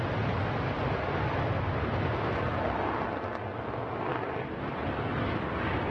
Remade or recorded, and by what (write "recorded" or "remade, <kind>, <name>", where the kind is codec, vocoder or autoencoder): recorded